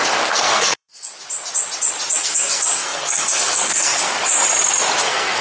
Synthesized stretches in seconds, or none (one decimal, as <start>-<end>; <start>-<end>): 0.0-1.1; 2.2-4.4; 5.0-5.4